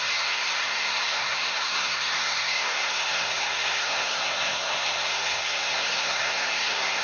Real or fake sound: fake